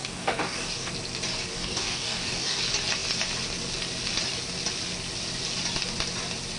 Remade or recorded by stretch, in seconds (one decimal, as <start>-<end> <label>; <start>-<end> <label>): 0.0-0.9 remade; 0.9-1.5 recorded; 1.5-2.6 remade; 2.6-6.6 recorded